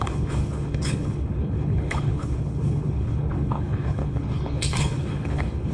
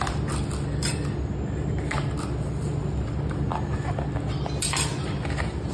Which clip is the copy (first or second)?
first